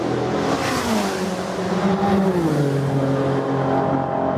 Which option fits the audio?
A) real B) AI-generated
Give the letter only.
A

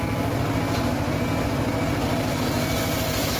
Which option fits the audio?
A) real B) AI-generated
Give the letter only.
A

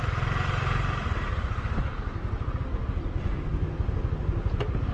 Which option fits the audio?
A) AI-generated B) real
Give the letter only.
B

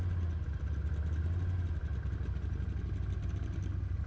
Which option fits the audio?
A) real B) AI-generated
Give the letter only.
A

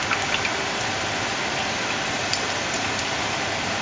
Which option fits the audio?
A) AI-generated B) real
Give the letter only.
B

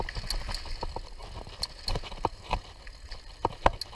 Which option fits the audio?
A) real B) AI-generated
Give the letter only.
A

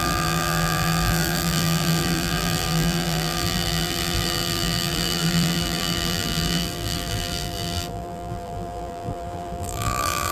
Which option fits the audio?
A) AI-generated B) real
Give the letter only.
A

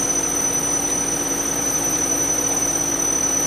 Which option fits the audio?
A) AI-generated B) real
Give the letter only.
A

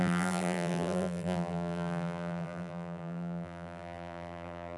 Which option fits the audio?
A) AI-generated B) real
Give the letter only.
A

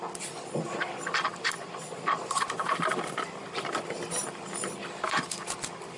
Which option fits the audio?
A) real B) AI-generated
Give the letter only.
A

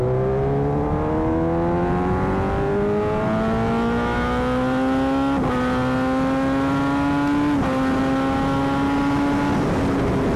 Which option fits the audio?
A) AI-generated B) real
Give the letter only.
B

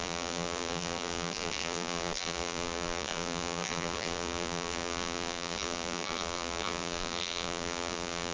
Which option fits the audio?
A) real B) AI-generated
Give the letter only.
B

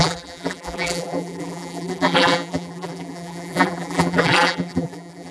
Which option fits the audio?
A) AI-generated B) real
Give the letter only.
A